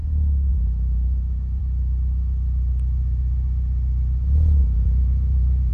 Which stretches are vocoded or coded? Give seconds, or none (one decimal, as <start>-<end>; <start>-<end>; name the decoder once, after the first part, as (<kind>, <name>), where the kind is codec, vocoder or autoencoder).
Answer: 0.5-1.6 (vocoder, Vocos); 4.6-5.7